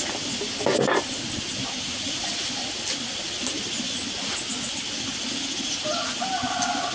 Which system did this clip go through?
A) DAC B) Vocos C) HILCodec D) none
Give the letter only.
D